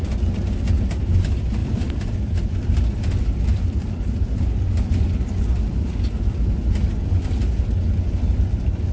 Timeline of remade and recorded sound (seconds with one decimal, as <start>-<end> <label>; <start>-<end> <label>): 0.0-1.6 recorded; 1.6-3.0 remade; 3.0-8.9 recorded